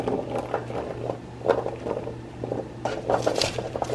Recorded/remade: recorded